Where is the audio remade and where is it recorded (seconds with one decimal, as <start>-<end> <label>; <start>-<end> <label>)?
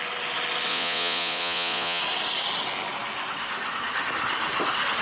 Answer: 0.0-0.7 recorded; 0.7-2.0 remade; 2.0-5.0 recorded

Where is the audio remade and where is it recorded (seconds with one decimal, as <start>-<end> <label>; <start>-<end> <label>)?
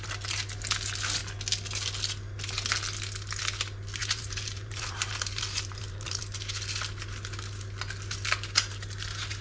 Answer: 0.0-4.0 recorded; 4.0-6.2 remade; 6.2-9.4 recorded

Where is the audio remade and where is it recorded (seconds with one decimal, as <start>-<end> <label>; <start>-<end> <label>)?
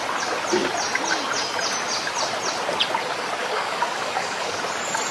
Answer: 0.0-3.4 recorded; 3.4-4.6 remade; 4.6-5.1 recorded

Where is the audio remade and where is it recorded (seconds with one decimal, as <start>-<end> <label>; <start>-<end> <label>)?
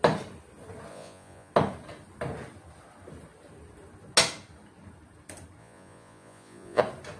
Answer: 0.0-0.9 recorded; 0.9-1.5 remade; 1.5-5.6 recorded; 5.6-6.8 remade; 6.8-7.2 recorded